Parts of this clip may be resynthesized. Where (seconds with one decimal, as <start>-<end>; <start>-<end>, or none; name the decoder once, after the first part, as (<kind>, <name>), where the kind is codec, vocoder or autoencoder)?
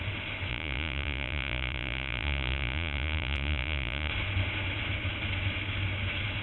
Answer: 0.5-4.1 (vocoder, Vocos)